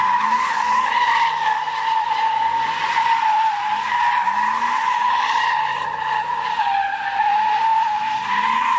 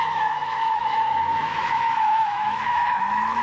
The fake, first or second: second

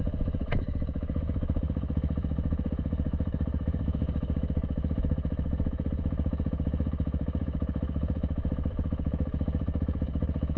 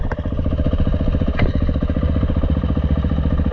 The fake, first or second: first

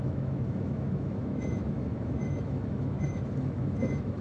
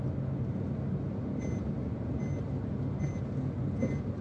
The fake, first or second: first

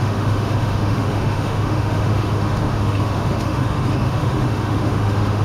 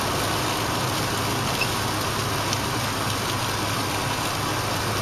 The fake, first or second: first